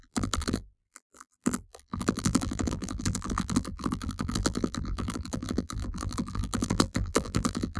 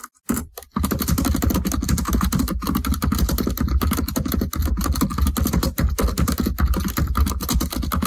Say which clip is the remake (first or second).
first